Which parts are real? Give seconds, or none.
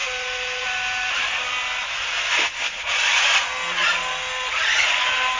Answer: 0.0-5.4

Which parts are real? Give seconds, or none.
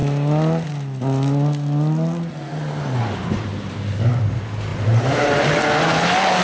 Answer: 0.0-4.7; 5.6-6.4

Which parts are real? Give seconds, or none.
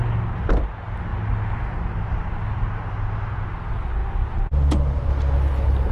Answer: 0.0-5.9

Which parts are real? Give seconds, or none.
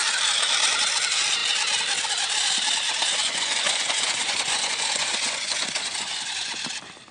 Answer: 0.0-3.2; 6.6-7.1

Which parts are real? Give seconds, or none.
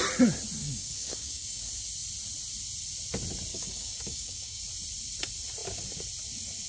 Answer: 0.0-0.6; 1.6-3.5; 4.6-6.7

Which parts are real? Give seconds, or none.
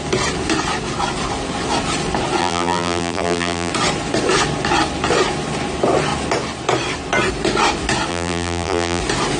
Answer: 0.0-2.4; 3.7-8.1; 9.0-9.4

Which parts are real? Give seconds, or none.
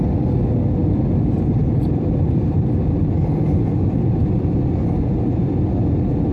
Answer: 0.0-0.8; 4.6-6.3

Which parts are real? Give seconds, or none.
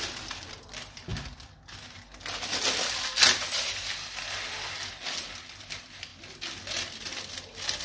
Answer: 0.0-7.8